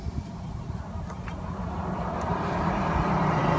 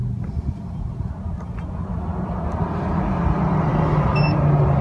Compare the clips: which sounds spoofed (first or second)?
first